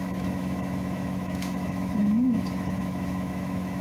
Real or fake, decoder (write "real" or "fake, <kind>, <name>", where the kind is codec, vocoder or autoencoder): fake, autoencoder, DAC-VAE